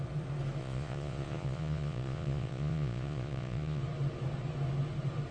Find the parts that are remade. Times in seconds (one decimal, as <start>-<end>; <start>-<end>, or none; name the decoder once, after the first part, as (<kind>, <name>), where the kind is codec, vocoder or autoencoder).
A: 0.6-3.8 (vocoder, Vocos)